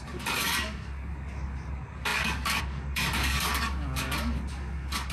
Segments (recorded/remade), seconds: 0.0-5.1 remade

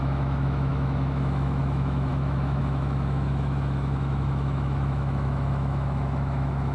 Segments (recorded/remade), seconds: 0.0-6.7 remade

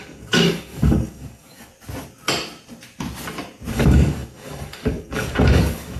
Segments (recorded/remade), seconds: 0.0-1.7 remade; 1.7-3.7 recorded; 3.7-6.0 remade

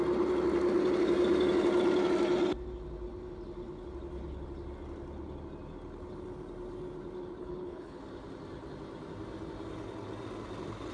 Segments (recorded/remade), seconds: 0.0-7.4 recorded; 7.4-8.0 remade; 8.0-10.9 recorded

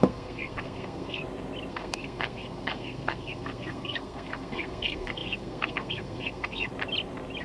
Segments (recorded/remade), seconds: 0.0-1.2 remade; 1.2-1.7 recorded; 1.7-6.7 remade; 6.7-7.4 recorded

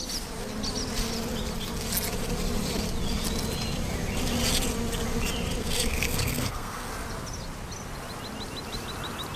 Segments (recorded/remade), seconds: 0.0-5.6 recorded; 5.6-6.9 remade; 6.9-9.4 recorded